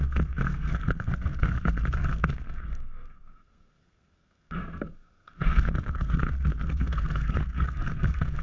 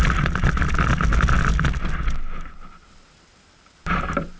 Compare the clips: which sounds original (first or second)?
second